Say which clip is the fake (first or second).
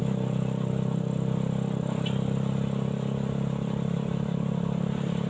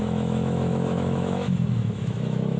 second